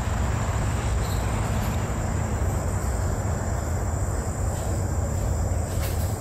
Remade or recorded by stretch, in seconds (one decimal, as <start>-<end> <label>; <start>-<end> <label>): 0.0-0.9 remade; 0.9-2.1 recorded; 2.1-2.8 remade; 2.8-5.7 recorded; 5.7-6.2 remade